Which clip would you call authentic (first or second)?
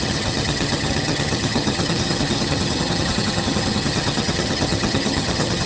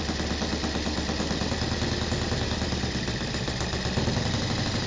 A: second